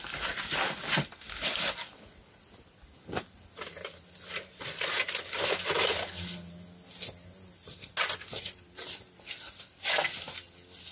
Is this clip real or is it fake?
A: real